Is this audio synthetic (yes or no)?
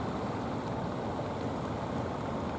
no